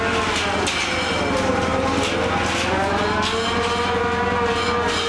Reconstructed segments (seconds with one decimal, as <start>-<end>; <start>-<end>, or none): none